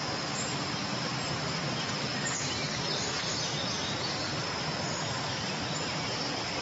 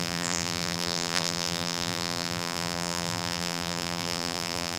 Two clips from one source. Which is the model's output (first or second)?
second